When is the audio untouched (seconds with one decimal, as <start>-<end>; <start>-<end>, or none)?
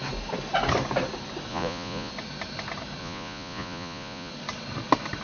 0.0-1.5; 2.1-3.0; 4.3-5.2